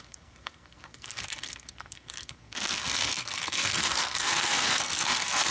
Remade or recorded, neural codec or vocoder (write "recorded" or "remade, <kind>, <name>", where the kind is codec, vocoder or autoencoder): remade, codec, SNAC